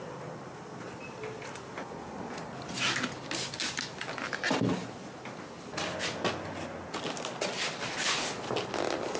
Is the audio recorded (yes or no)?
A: yes